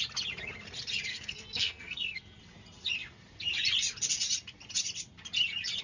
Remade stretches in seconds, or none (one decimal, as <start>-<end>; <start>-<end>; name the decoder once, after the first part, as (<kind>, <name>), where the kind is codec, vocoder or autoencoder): 1.1-2.4 (codec, SNAC)

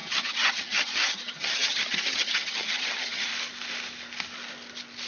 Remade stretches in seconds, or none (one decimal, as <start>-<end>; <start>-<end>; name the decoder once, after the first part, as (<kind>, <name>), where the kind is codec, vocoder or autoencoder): 0.0-3.3 (vocoder, HiFi-GAN)

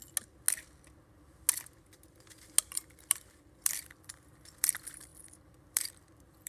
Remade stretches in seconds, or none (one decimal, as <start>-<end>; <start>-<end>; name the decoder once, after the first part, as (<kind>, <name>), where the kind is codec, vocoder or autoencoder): 2.6-6.5 (vocoder, BigVGAN v2)